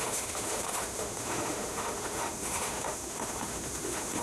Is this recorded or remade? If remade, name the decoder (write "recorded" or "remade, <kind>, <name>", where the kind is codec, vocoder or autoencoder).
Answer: remade, autoencoder, DAC-VAE